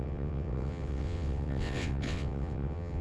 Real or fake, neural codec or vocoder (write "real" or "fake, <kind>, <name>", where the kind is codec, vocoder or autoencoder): fake, vocoder, WaveNeXt